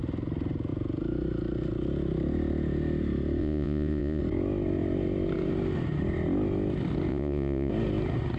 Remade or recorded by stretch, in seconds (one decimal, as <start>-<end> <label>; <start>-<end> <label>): 0.0-3.4 recorded; 3.4-4.2 remade; 4.2-7.1 recorded; 7.1-7.7 remade; 7.7-8.4 recorded

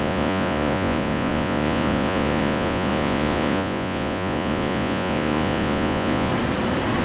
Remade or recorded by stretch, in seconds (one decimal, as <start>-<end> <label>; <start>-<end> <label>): 0.0-6.3 remade; 6.3-7.0 recorded

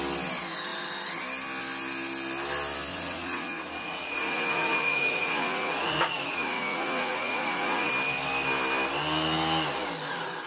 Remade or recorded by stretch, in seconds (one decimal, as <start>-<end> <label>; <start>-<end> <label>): 0.0-2.9 recorded; 2.9-7.9 remade; 7.9-10.5 recorded

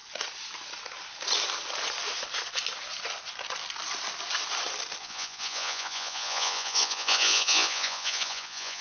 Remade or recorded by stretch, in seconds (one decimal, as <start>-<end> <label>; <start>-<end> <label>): 0.0-5.0 recorded; 5.0-8.8 remade